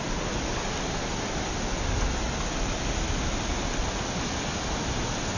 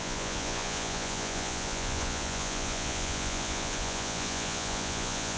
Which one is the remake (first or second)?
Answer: second